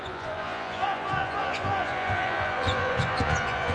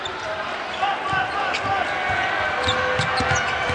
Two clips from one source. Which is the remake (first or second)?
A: first